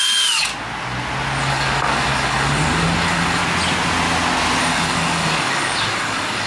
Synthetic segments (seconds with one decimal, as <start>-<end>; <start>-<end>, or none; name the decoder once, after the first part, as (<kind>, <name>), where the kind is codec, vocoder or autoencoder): 0.0-0.5 (codec, DAC); 1.4-3.4; 4.6-6.5